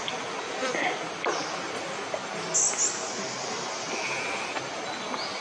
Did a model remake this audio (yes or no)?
no